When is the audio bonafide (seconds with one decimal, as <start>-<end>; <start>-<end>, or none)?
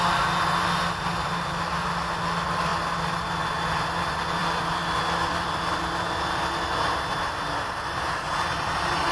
0.0-9.1